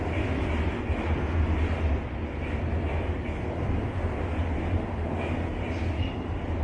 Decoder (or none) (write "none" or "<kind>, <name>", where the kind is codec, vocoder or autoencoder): none